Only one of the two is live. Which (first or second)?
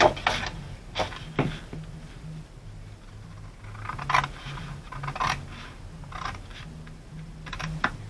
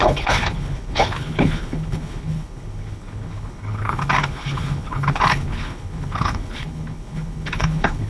first